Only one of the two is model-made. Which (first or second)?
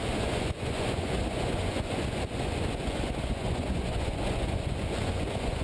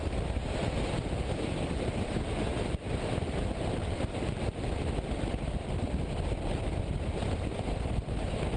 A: first